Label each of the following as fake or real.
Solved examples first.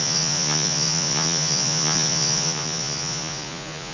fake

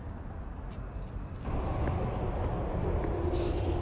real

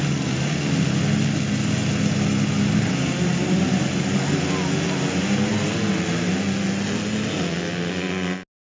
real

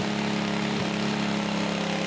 real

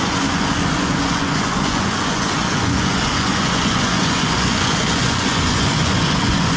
fake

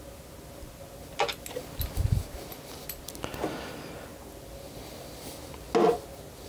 real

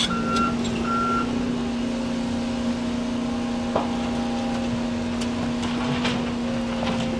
real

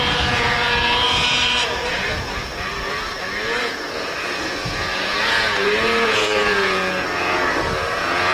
fake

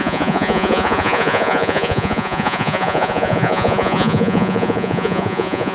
fake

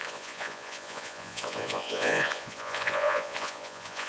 fake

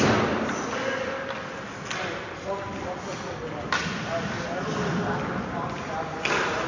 real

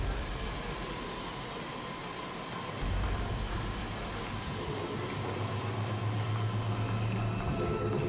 real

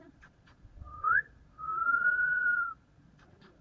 fake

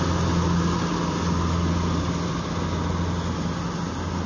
real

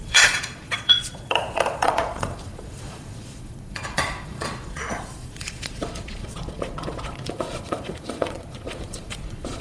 fake